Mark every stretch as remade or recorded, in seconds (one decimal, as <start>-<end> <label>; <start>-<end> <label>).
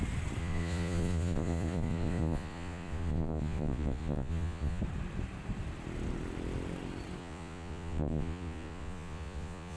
0.0-0.4 recorded; 0.4-4.8 remade; 4.8-7.2 recorded; 7.2-9.8 remade